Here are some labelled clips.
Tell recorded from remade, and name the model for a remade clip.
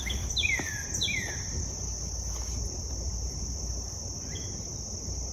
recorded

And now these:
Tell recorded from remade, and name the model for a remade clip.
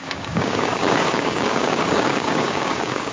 remade, codec, DAC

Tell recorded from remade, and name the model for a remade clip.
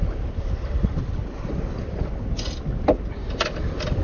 recorded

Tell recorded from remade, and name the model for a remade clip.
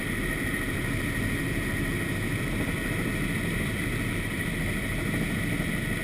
recorded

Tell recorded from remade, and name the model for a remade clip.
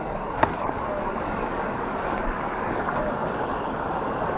remade, codec, DAC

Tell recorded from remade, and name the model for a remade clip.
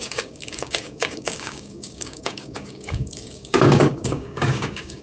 remade, codec, DAC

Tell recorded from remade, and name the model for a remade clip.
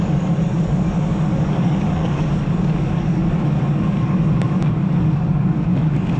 remade, codec, DAC